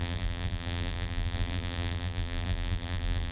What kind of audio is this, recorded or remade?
remade